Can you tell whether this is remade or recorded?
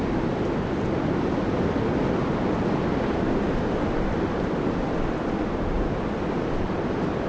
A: recorded